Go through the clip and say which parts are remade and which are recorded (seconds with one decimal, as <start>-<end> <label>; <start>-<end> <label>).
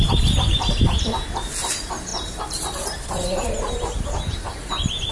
0.0-2.1 recorded; 2.1-5.1 remade